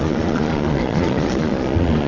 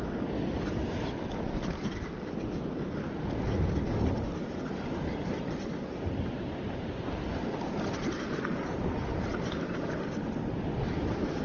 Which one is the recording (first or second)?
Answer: second